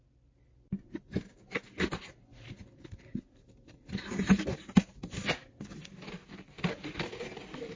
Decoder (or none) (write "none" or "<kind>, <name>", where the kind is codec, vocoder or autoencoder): none